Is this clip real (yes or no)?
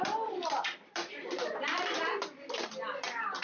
yes